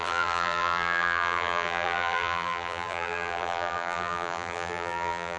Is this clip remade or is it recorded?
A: remade